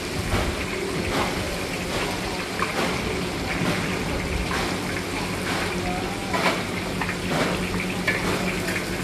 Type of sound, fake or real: real